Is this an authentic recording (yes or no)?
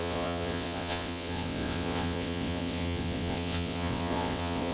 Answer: no